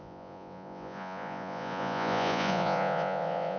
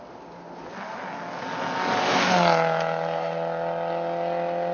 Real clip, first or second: second